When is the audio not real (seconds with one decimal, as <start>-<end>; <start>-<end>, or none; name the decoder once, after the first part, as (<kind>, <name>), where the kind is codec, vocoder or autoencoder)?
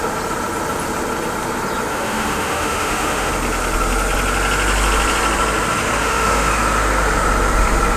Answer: 1.9-3.3 (autoencoder, DAC-VAE); 6.0-6.5